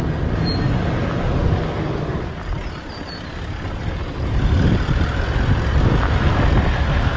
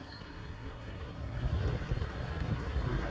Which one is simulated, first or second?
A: second